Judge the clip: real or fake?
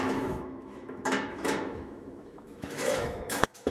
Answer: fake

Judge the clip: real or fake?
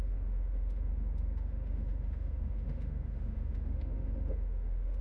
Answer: fake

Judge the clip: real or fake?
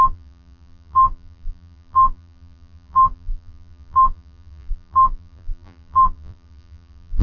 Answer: fake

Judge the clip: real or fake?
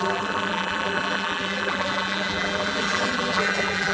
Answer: fake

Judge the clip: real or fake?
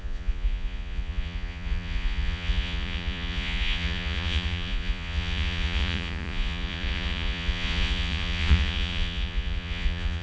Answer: fake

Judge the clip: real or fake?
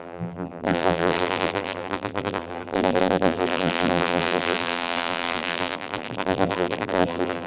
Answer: fake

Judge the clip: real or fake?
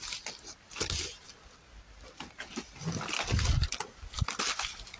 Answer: real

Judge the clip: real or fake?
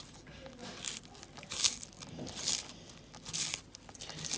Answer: real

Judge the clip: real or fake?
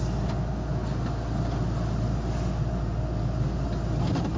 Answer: real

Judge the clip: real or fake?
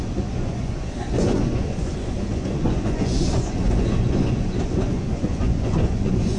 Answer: fake